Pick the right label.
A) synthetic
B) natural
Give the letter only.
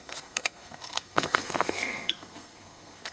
A